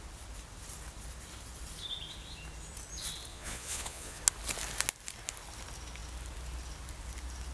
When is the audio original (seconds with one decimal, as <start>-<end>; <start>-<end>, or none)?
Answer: 0.0-3.3; 4.2-7.5